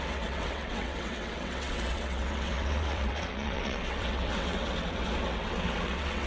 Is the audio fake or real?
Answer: fake